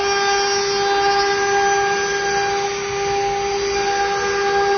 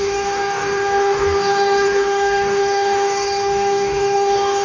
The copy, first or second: second